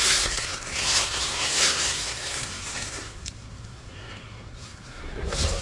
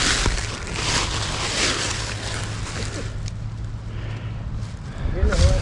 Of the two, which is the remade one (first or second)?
first